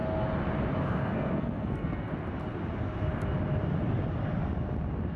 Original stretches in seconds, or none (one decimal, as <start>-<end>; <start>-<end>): 0.0-0.8; 2.1-5.2